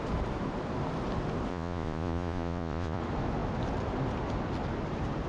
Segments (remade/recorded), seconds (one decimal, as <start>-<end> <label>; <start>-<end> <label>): 0.0-1.5 recorded; 1.5-3.0 remade; 3.0-5.3 recorded